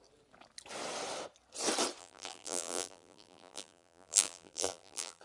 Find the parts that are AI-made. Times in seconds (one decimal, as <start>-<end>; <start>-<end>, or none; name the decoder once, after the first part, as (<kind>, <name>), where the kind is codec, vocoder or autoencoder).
2.0-5.2 (vocoder, BigVGAN v2)